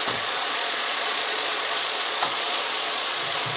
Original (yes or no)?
no